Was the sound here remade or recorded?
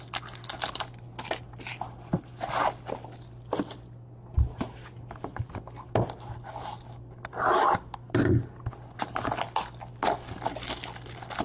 recorded